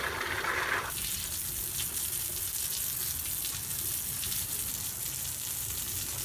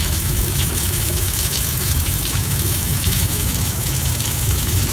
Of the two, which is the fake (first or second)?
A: second